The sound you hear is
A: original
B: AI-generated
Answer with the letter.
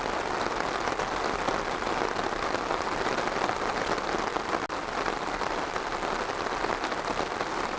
A